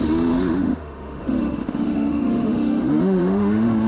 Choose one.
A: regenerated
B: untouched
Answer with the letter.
A